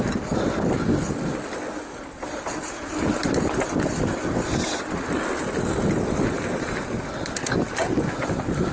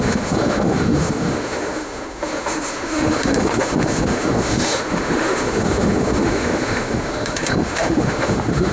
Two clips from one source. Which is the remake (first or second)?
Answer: second